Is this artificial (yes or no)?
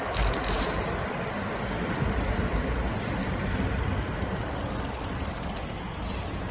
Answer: no